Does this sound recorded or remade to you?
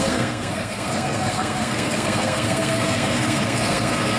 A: remade